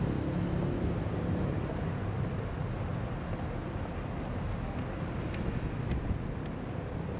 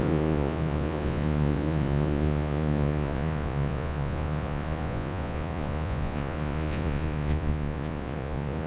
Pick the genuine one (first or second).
first